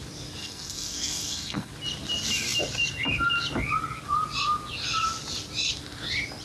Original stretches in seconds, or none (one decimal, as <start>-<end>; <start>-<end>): 0.0-0.4; 1.7-6.4